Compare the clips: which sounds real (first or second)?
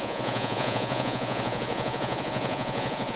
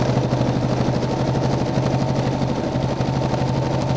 second